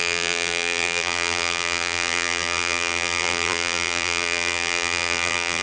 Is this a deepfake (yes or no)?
yes